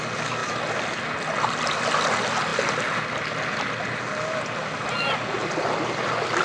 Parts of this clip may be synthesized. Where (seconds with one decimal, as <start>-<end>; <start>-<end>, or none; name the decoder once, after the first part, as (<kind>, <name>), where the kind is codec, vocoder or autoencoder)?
none